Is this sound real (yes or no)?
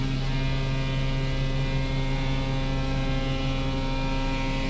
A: yes